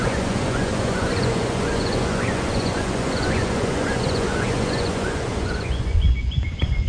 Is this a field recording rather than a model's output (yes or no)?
no